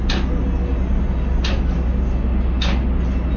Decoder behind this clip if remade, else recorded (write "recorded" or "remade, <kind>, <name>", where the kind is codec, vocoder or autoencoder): recorded